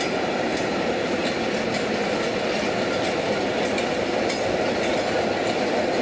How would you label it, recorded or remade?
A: recorded